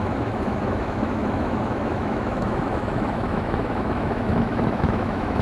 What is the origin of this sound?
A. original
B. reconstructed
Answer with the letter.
B